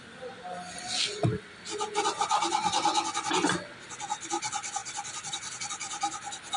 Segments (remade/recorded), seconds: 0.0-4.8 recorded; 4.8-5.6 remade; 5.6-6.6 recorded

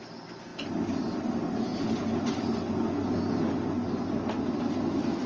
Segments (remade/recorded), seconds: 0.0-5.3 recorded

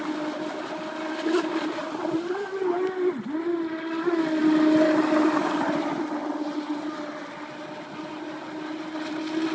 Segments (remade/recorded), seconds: 0.0-9.5 recorded

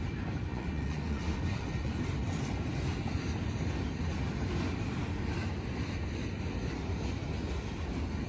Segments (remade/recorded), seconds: 0.0-0.5 recorded; 0.5-2.0 remade; 2.0-8.3 recorded

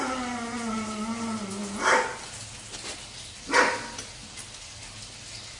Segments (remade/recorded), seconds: 0.0-5.6 recorded

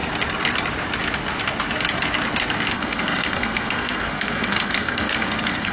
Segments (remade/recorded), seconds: 0.0-2.7 recorded; 2.7-5.7 remade

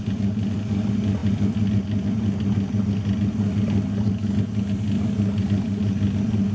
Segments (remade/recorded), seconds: 0.0-6.5 recorded

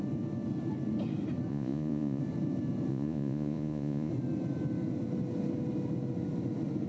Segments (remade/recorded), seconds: 0.0-1.5 recorded; 1.5-2.2 remade; 2.2-2.9 recorded; 2.9-4.1 remade; 4.1-6.9 recorded